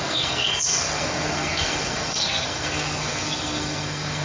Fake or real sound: fake